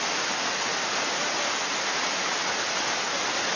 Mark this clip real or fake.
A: real